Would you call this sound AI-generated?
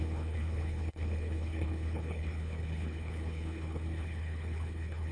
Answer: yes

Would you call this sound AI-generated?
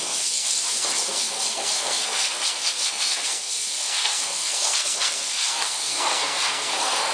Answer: yes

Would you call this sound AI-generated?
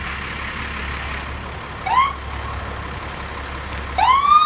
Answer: no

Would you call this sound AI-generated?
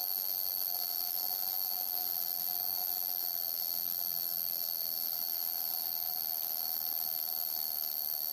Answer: yes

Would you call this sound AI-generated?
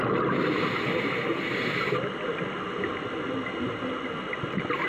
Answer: no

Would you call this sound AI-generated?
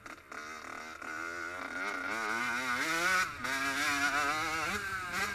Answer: no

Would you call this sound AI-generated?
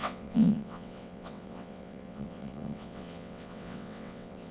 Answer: yes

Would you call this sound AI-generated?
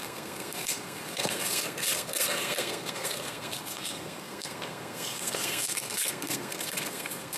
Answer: yes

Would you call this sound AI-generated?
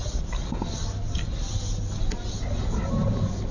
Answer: no